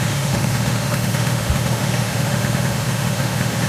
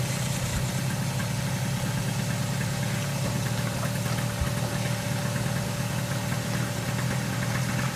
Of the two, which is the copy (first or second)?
first